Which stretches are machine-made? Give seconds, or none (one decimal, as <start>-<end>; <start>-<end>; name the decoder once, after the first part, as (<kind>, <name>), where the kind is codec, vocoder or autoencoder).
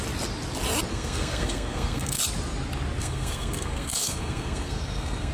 0.9-2.2 (codec, SNAC); 3.0-5.3